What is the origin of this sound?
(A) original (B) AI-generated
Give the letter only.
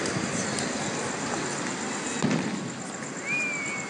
A